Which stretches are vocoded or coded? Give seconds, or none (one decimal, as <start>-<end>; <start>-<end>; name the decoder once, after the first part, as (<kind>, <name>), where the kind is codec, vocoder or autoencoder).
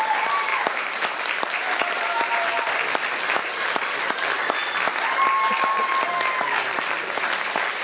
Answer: 0.5-2.7 (vocoder, BigVGAN v2); 3.4-4.0